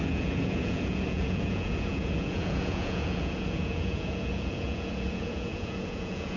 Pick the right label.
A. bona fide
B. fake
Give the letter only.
B